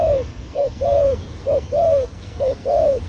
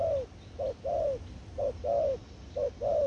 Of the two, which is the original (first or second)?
second